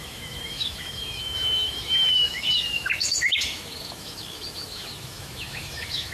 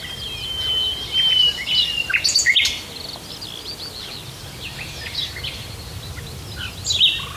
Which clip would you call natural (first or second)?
second